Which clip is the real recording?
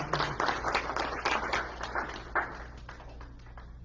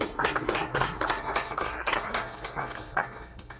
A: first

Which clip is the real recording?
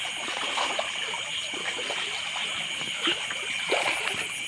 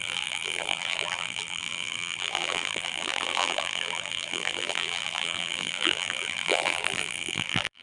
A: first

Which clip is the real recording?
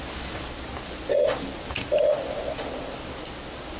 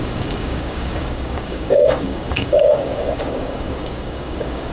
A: first